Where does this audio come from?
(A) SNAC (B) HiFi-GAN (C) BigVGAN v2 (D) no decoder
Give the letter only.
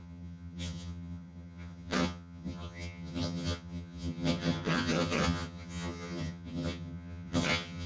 B